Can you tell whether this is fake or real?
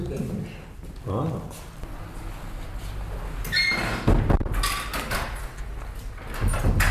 real